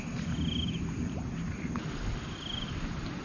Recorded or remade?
recorded